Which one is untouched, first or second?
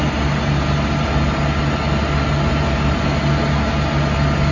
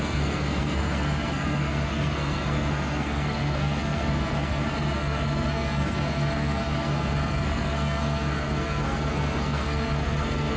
first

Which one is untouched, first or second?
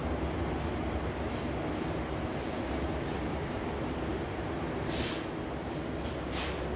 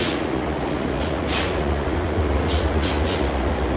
first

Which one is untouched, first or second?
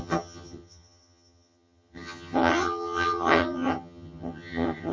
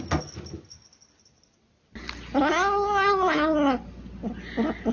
second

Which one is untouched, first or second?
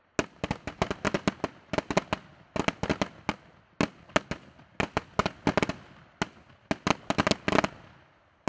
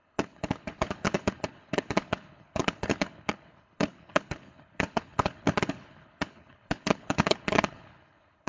first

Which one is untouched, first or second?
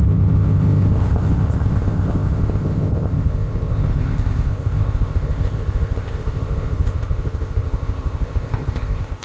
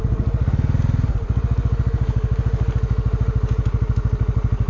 second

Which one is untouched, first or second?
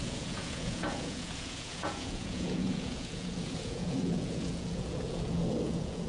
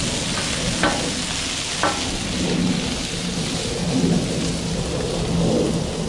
second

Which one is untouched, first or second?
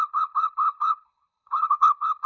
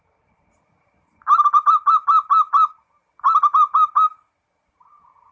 second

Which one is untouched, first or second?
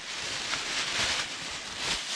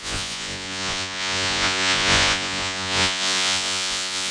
first